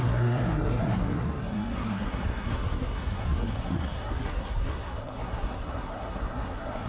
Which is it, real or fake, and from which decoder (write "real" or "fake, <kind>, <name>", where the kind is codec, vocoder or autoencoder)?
fake, codec, SNAC